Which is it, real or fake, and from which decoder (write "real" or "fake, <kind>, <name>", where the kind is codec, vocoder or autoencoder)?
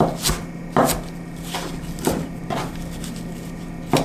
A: real